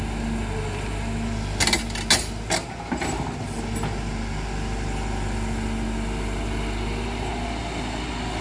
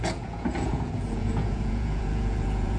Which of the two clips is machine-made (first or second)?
second